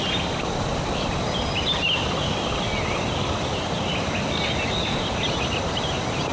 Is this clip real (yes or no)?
yes